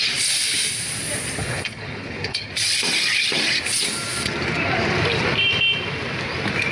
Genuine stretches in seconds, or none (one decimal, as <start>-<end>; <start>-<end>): 0.0-1.4; 2.5-6.7